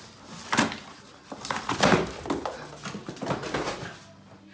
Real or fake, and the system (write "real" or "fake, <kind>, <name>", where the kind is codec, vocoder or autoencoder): real